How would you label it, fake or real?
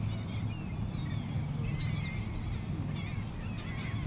real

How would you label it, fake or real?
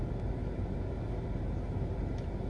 real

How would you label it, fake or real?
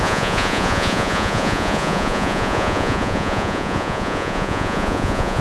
fake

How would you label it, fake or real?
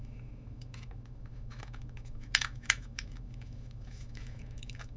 fake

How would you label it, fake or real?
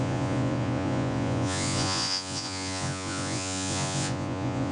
fake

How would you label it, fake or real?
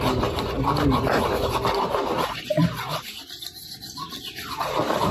real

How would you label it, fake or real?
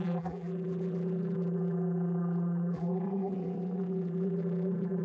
fake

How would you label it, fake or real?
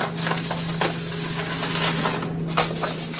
real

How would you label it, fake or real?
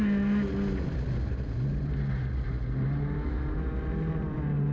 real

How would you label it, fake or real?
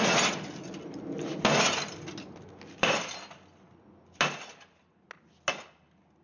real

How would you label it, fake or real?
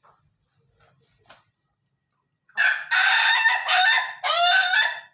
real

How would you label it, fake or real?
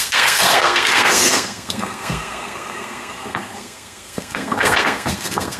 fake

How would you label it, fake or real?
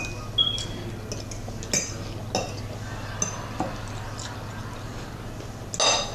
real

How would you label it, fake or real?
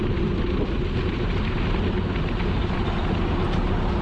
real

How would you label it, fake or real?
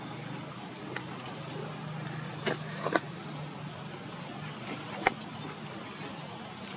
real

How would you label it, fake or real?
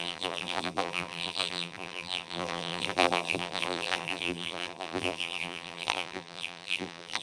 fake